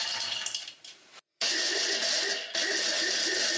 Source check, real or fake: real